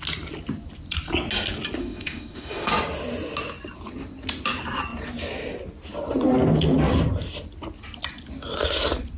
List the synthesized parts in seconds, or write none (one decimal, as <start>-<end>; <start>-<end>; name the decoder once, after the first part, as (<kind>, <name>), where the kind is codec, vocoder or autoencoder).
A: 1.8-2.7 (autoencoder, DAC-VAE)